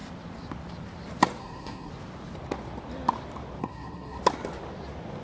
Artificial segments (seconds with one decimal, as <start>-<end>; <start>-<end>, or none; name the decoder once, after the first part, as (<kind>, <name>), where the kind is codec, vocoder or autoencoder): 1.4-1.9 (codec, SNAC); 3.6-4.2